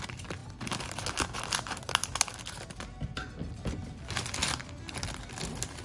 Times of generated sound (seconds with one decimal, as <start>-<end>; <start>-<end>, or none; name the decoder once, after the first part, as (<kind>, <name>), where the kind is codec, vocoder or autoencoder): none